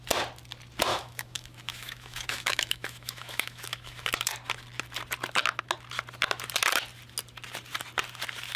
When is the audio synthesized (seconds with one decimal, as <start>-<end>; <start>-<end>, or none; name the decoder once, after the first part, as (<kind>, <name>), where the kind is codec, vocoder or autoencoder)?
0.9-4.3 (autoencoder, DAC-VAE)